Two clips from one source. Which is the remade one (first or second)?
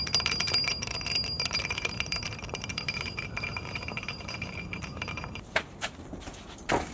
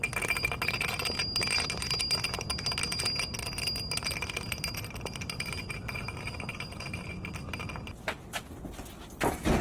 first